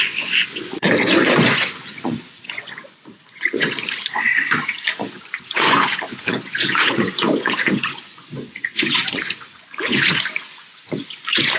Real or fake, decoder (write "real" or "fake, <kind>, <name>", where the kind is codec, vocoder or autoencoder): fake, vocoder, Vocos